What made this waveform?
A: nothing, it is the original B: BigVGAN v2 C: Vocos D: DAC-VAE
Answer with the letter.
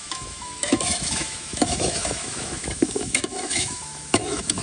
D